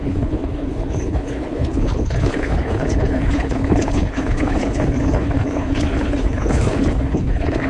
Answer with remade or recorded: remade